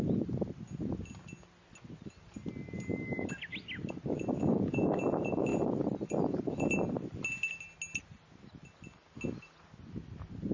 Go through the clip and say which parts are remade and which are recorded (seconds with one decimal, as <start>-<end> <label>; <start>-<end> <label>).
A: 0.0-10.5 recorded